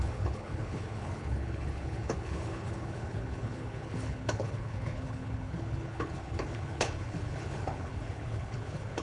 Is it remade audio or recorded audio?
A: remade